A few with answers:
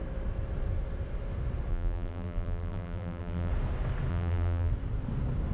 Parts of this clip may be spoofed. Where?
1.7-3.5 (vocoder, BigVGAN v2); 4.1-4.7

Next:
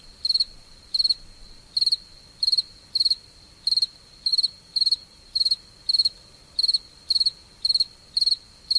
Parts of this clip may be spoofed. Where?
4.3-5.6 (vocoder, BigVGAN v2)

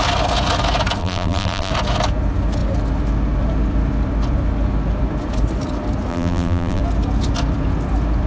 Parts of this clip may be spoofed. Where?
1.0-1.7 (vocoder, BigVGAN v2); 6.1-6.8